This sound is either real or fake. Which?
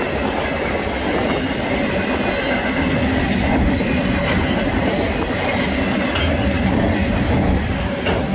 real